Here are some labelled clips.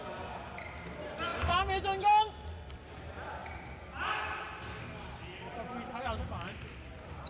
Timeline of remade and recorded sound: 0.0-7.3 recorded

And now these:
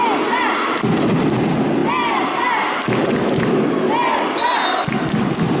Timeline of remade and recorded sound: 0.0-5.6 recorded

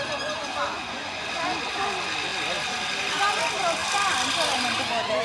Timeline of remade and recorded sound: 0.0-0.7 recorded; 0.7-1.3 remade; 1.3-5.2 recorded